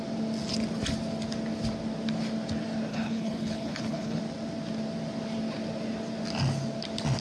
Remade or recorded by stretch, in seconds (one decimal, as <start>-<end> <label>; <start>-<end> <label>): 0.0-2.9 recorded; 2.9-4.2 remade; 4.2-7.2 recorded